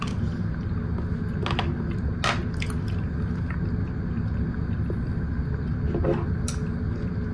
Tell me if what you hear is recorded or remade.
recorded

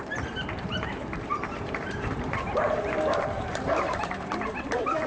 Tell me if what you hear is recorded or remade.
remade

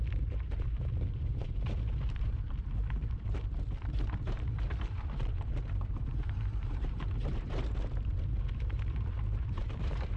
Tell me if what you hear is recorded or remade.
remade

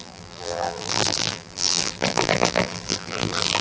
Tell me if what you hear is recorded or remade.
remade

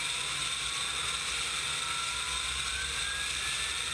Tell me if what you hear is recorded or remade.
recorded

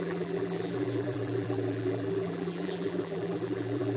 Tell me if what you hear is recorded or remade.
remade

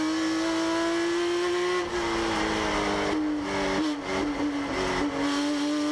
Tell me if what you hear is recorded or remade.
recorded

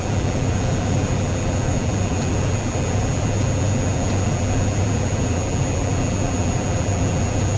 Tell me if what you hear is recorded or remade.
remade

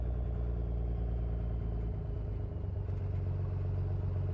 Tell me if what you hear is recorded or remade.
recorded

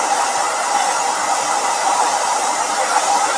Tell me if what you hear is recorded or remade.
remade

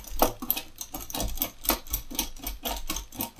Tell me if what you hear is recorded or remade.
recorded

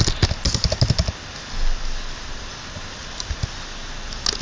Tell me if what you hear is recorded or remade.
recorded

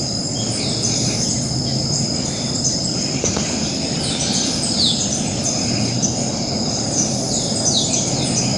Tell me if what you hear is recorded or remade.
remade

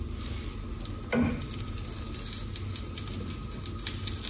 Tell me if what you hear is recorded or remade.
recorded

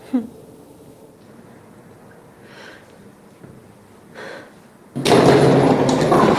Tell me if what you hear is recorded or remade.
recorded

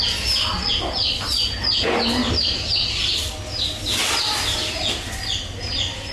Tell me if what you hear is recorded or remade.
recorded